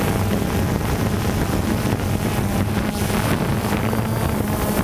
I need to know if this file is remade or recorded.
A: recorded